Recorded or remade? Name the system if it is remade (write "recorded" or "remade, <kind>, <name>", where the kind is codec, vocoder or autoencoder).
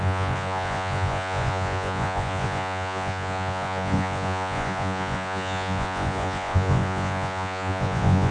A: remade, vocoder, Vocos